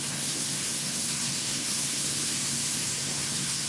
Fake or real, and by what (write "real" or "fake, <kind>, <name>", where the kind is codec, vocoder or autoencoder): fake, codec, SNAC